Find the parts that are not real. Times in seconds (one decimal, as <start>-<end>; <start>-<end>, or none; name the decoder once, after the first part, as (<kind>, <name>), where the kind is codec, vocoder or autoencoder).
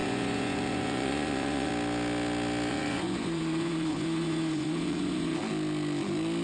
0.0-1.7 (vocoder, Vocos); 2.7-5.4